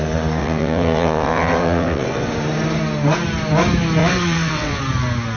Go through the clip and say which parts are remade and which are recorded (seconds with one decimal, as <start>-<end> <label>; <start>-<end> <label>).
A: 0.0-0.4 recorded; 0.4-2.3 remade; 2.3-4.0 recorded; 4.0-4.8 remade; 4.8-5.4 recorded